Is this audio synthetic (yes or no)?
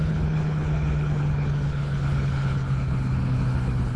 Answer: yes